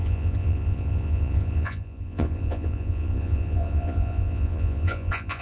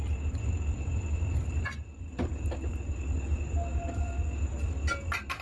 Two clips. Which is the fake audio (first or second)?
first